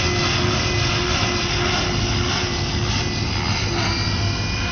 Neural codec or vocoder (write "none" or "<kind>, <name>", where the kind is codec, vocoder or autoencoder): none